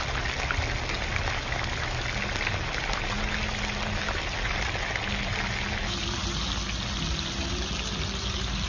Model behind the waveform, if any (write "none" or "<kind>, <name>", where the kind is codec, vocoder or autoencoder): none